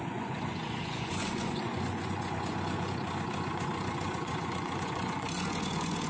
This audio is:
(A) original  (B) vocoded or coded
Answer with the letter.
B